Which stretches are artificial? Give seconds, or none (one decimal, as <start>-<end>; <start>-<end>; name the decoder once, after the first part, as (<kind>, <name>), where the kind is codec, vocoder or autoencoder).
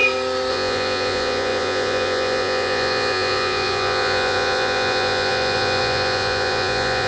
0.5-7.1 (vocoder, Vocos)